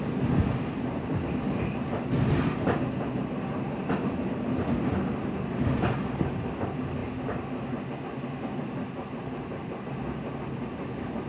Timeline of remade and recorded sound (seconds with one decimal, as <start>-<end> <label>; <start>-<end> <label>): 0.0-11.3 recorded